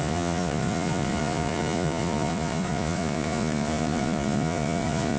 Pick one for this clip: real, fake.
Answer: fake